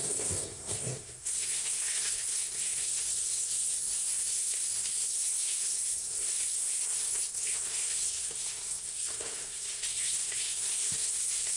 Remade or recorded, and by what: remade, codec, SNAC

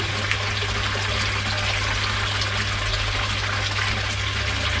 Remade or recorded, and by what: recorded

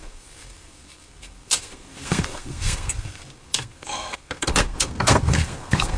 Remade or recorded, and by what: remade, codec, SNAC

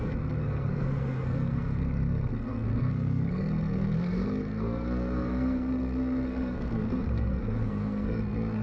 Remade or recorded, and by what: remade, codec, SNAC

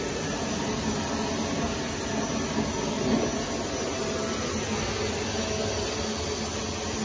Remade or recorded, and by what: recorded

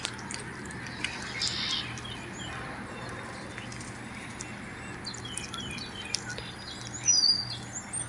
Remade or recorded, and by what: recorded